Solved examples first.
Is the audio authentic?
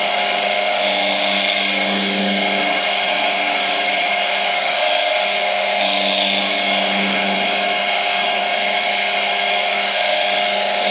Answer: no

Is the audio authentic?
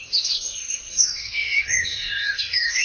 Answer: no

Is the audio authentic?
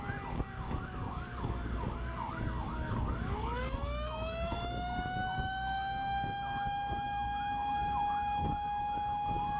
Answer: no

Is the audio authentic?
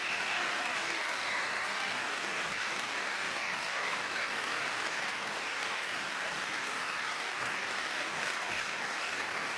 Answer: no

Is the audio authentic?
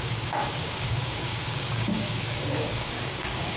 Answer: no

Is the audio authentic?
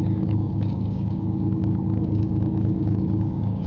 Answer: no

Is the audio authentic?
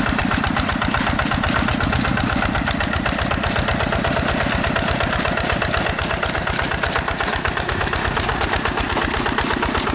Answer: yes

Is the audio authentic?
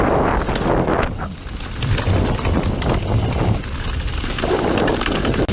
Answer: yes